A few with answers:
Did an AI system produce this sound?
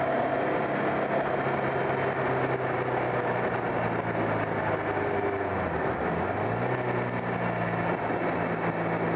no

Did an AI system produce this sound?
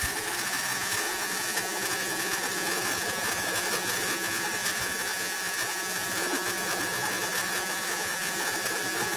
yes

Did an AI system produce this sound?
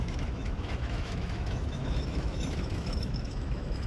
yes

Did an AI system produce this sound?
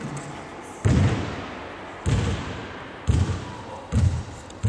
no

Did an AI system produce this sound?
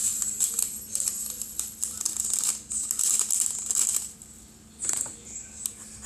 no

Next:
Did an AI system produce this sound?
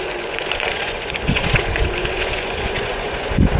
yes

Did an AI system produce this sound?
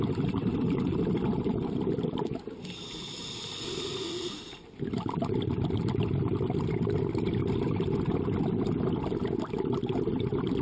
no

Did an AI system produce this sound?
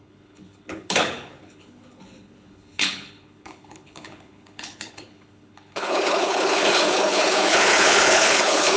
yes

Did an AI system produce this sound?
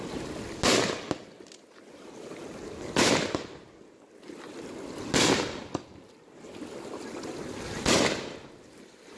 no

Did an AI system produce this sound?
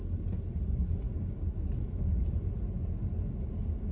no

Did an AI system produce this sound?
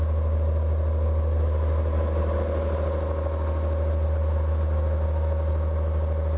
no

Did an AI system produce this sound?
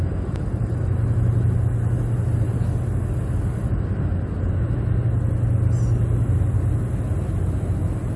no